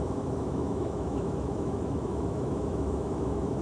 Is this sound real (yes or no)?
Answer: no